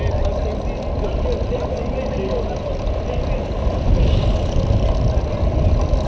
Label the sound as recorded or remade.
recorded